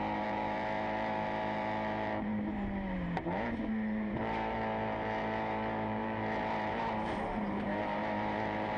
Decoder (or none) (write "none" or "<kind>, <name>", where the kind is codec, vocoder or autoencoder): vocoder, BigVGAN v2